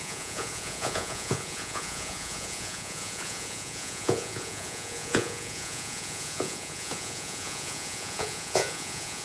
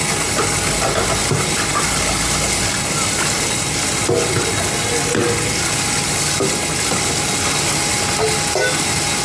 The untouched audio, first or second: second